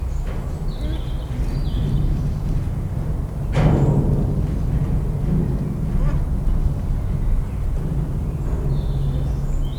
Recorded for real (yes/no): yes